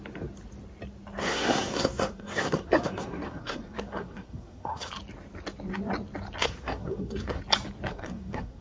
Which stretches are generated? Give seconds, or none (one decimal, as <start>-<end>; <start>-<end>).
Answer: 1.2-4.9; 6.4-7.4; 7.9-8.6